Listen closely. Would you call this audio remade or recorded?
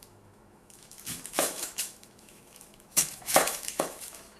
remade